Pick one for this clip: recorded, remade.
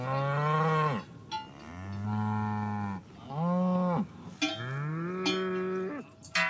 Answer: recorded